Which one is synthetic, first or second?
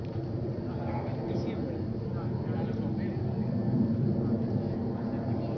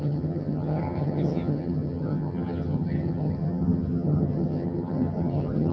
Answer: second